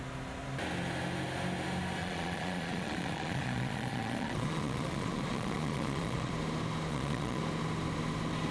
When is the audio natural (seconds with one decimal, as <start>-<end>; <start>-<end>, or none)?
0.0-2.0; 6.3-6.9; 7.4-8.5